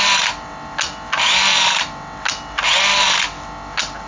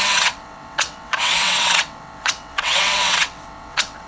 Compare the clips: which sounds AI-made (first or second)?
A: second